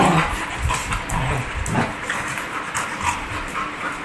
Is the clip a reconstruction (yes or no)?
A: no